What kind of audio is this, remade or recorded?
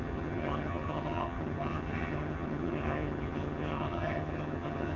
remade